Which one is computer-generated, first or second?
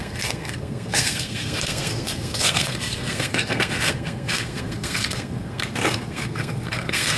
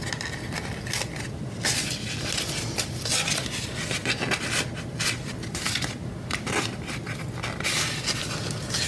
first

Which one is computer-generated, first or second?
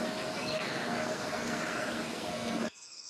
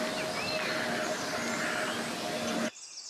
first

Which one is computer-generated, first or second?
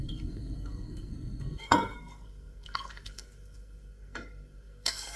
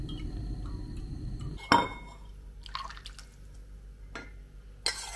first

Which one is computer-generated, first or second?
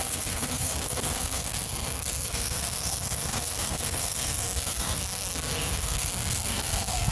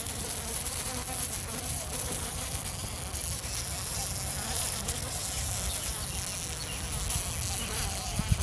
first